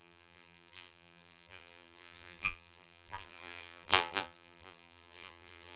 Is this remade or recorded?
remade